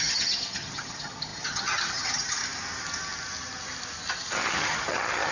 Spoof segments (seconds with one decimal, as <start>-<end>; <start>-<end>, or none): 0.0-2.4; 4.2-5.3